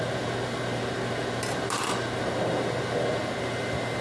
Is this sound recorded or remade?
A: recorded